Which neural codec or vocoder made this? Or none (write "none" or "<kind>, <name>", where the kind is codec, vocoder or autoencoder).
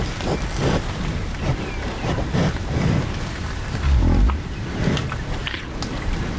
none